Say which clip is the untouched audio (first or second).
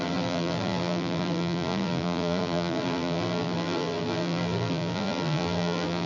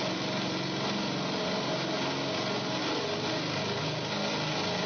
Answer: second